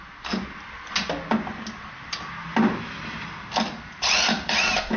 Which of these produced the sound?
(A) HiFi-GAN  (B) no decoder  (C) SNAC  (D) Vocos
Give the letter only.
B